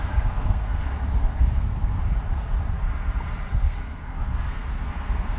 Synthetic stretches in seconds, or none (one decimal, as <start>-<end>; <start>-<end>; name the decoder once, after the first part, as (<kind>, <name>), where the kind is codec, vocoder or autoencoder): 0.0-0.8 (codec, SNAC); 1.6-2.0; 3.5-5.4